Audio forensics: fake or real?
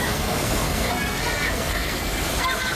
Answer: fake